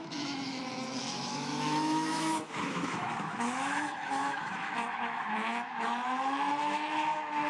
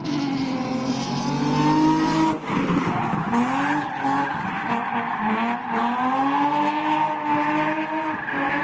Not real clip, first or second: first